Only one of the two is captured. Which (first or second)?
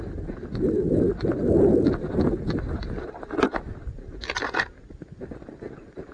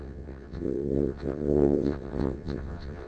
first